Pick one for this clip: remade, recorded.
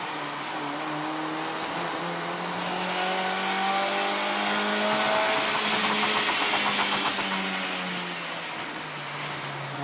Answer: recorded